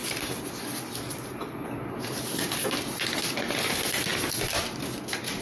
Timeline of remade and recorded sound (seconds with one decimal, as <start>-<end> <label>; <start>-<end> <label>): 0.0-5.4 recorded